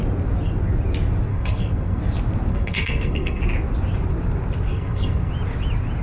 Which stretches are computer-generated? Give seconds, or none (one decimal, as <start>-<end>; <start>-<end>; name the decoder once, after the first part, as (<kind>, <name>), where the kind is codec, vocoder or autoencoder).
1.3-2.0 (codec, SNAC); 2.5-3.4; 4.7-5.3